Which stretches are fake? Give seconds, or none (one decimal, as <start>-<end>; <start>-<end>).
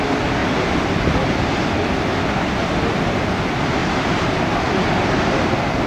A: 0.4-1.4; 3.8-4.7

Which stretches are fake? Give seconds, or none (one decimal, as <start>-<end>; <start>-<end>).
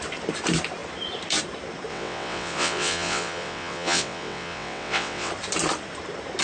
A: 1.9-5.3